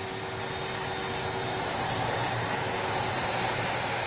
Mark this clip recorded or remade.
recorded